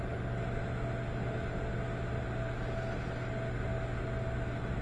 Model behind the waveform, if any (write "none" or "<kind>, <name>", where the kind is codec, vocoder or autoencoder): none